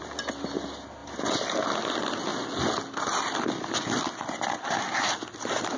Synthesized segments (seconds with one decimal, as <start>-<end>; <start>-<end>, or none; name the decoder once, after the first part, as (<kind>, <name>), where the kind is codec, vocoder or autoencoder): none